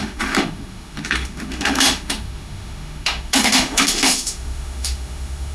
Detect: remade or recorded remade